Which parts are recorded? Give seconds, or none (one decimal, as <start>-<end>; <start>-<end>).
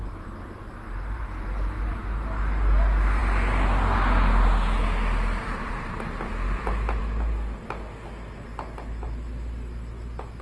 0.0-10.4